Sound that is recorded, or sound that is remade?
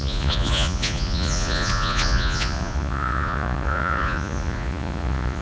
remade